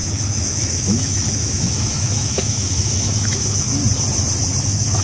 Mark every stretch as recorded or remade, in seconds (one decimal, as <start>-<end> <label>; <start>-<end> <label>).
0.0-3.8 remade; 3.8-4.6 recorded; 4.6-5.0 remade